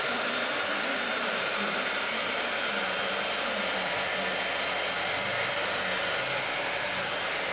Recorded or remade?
recorded